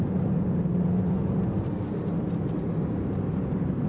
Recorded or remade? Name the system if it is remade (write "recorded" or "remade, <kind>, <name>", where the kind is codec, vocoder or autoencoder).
recorded